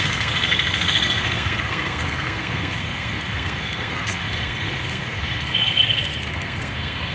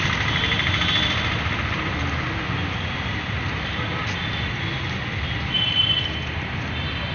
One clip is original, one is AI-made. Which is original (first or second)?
second